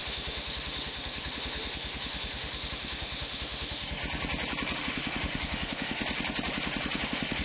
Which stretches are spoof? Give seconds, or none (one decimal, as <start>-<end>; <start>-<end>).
0.0-4.0; 4.8-6.0; 7.0-7.4